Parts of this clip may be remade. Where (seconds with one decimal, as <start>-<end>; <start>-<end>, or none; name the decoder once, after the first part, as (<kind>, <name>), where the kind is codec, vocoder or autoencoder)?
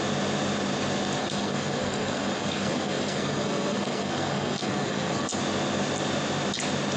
1.2-5.4 (codec, SNAC)